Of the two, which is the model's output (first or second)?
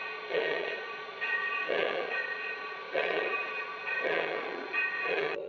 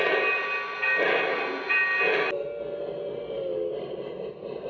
first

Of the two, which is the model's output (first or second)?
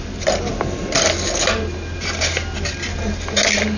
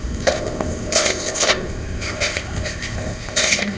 second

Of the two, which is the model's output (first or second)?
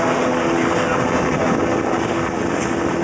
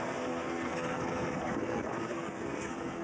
second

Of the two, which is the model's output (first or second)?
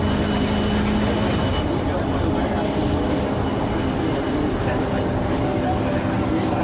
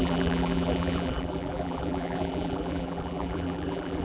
second